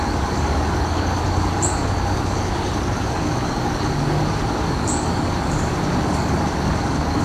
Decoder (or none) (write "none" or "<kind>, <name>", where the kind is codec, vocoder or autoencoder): codec, DAC